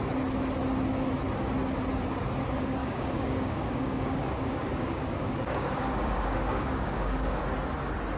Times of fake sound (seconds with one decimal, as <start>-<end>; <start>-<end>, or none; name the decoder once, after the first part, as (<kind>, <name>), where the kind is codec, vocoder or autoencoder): 2.8-7.4 (codec, DAC)